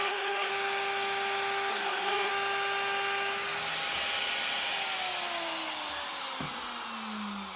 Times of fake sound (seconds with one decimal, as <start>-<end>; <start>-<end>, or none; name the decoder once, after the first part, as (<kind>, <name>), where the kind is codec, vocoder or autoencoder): 0.0-0.5 (codec, SNAC); 1.7-2.3